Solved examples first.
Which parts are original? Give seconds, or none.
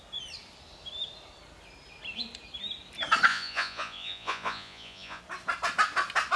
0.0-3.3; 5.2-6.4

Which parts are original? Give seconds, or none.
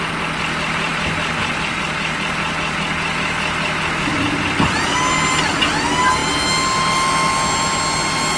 0.0-8.4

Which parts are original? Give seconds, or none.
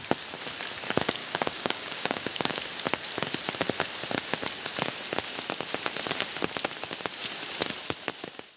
0.0-1.2; 2.6-8.6